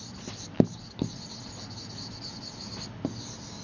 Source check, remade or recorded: recorded